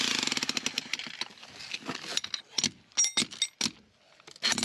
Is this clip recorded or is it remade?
recorded